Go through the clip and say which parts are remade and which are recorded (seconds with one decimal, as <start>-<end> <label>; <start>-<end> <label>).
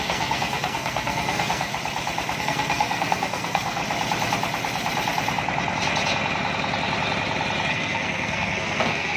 0.0-1.7 remade; 1.7-2.4 recorded; 2.4-3.8 remade; 3.8-7.7 recorded; 7.7-9.2 remade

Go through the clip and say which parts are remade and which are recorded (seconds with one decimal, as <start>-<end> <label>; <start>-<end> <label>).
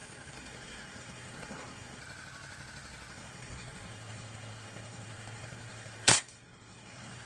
0.0-2.0 remade; 2.0-3.1 recorded; 3.1-7.3 remade